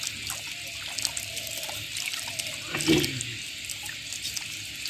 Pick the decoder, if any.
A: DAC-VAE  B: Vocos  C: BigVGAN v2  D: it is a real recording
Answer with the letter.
D